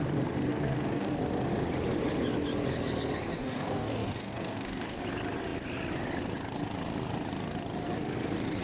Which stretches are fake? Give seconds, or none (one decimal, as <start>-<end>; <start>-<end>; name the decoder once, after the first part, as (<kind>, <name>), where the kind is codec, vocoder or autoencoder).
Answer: 0.5-1.1 (codec, DAC); 3.4-5.0